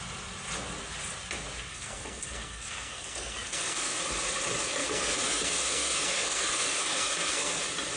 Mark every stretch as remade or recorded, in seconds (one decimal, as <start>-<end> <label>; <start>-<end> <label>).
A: 0.0-1.7 recorded; 1.7-4.0 remade; 4.0-4.8 recorded; 4.8-7.6 remade; 7.6-8.0 recorded